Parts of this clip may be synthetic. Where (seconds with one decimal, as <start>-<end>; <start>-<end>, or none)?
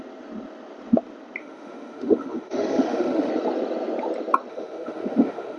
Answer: 1.4-3.3; 4.5-5.6